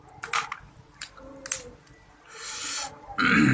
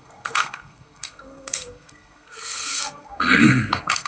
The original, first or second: first